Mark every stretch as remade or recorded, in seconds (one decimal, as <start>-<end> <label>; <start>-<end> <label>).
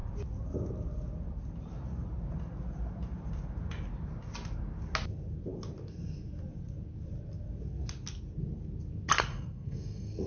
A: 0.0-9.3 recorded; 9.3-10.3 remade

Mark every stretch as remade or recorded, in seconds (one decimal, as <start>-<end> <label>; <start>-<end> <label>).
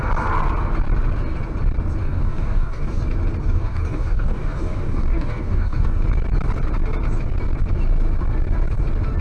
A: 0.0-2.0 recorded; 2.0-3.0 remade; 3.0-3.4 recorded; 3.4-6.0 remade; 6.0-9.2 recorded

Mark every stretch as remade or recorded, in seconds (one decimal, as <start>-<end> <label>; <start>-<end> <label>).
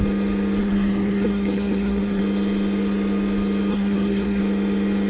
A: 0.0-0.6 recorded; 0.6-2.2 remade; 2.2-3.7 recorded; 3.7-4.4 remade; 4.4-5.1 recorded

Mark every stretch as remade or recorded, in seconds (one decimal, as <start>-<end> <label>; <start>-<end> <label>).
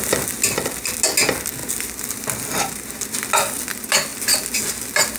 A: 0.0-1.6 recorded; 1.6-3.0 remade; 3.0-5.2 recorded